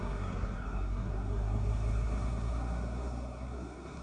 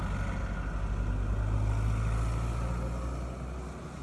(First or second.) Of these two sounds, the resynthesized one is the first